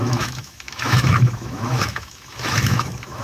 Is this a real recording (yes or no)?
no